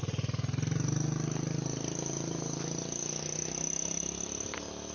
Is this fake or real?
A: real